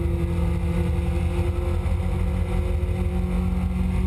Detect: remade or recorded recorded